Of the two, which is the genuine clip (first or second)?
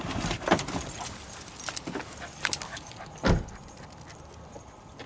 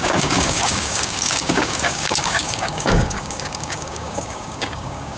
first